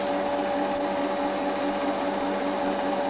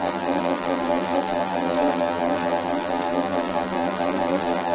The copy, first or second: second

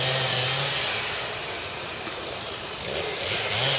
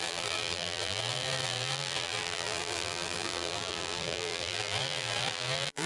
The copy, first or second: second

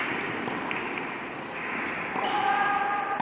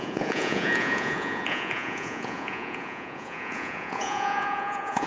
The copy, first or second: second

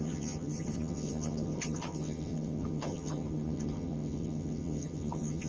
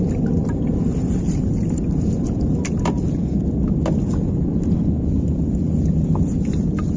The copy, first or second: first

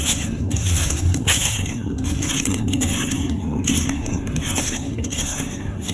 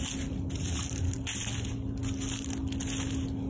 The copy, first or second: first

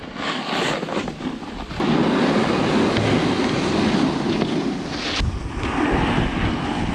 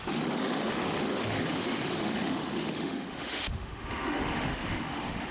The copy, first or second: second